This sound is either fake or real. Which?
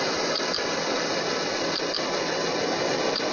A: real